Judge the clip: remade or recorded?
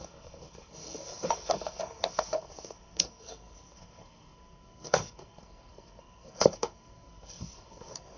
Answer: remade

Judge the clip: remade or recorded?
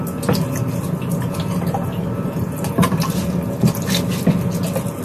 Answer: recorded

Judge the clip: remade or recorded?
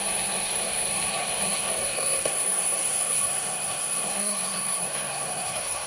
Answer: remade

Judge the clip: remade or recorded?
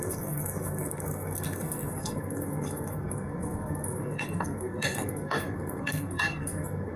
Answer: remade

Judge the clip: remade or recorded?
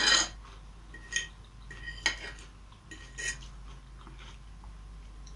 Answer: recorded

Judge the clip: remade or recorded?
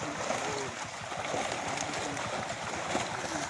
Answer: recorded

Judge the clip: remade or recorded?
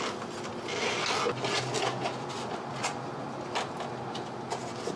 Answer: recorded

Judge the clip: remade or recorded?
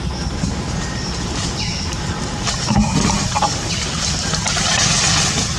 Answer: recorded